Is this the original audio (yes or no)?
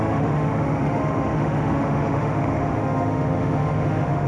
no